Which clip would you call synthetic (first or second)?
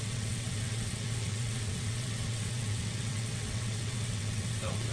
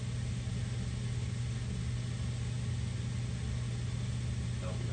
first